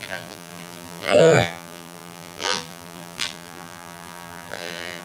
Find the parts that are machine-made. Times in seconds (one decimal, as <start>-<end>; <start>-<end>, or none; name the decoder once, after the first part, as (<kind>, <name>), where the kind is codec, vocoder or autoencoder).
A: 0.0-5.0 (vocoder, BigVGAN v2)